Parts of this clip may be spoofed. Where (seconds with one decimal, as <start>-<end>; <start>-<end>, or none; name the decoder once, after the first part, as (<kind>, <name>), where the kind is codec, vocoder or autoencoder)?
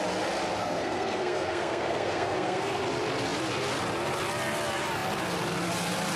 0.6-2.8 (codec, SNAC)